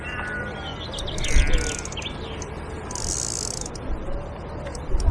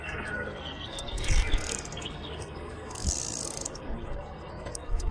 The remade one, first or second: second